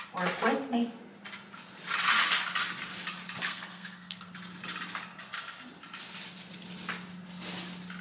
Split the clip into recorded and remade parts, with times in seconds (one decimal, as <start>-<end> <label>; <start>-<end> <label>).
0.0-3.5 recorded; 3.5-4.3 remade; 4.3-8.0 recorded